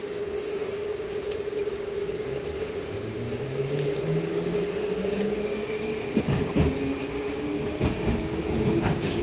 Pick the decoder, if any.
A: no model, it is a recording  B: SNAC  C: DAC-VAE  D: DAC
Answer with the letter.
D